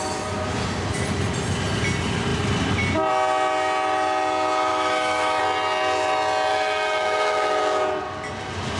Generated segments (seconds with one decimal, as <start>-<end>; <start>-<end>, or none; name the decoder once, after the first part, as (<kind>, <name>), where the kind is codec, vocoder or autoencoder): 4.7-5.4 (autoencoder, DAC-VAE); 6.5-7.6